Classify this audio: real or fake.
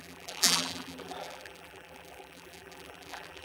fake